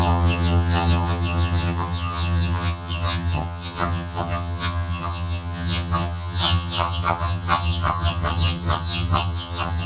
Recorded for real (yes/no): no